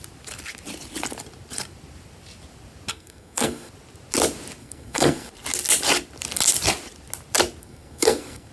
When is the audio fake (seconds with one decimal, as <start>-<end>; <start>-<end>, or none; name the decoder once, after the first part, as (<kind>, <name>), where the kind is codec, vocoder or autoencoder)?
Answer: 2.9-3.7 (codec, SNAC); 4.6-5.3; 7.6-8.5